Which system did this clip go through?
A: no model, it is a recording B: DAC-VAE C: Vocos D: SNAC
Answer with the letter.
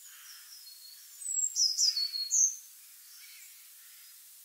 A